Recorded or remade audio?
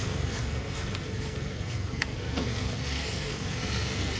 remade